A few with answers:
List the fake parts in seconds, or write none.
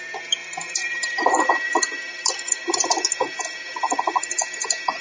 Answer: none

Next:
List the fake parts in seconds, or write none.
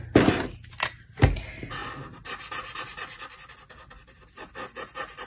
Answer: none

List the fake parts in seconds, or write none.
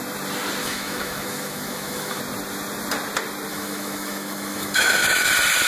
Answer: 0.6-2.2 (autoencoder, DAC-VAE); 3.5-5.3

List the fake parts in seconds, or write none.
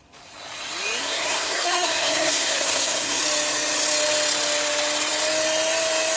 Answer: 1.0-3.2 (codec, SNAC)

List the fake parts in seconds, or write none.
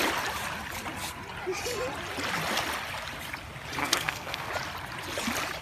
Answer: 3.8-4.5 (codec, SNAC)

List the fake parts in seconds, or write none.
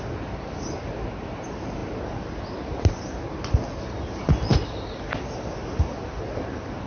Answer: none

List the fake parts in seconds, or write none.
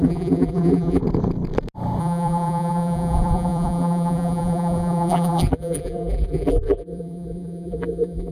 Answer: 0.0-1.0 (vocoder, BigVGAN v2); 2.0-8.3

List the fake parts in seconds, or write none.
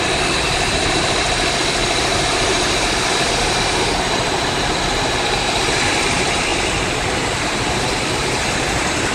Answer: 0.0-1.8 (vocoder, BigVGAN v2); 5.9-6.5; 7.6-9.1